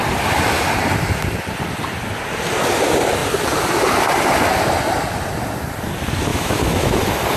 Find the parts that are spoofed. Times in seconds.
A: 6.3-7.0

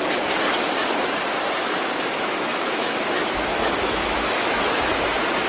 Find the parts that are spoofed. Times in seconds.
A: 1.6-4.9

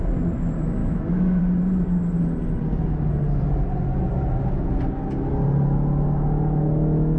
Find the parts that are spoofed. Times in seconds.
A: 0.8-1.4

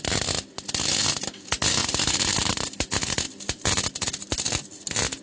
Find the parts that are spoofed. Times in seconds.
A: none

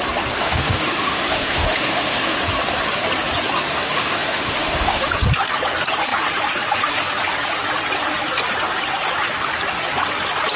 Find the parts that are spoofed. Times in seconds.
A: 0.4-2.4; 3.7-5.1

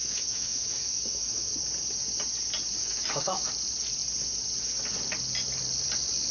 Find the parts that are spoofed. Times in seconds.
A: 0.0-1.5; 2.8-3.5

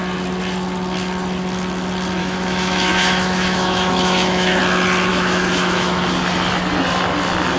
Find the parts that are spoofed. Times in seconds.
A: 2.2-4.6; 5.1-6.0

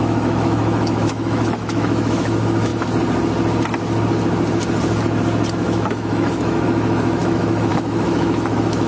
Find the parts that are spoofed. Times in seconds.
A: 0.0-2.7; 5.5-8.9